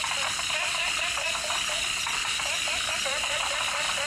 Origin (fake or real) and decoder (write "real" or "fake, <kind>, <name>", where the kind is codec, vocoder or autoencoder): real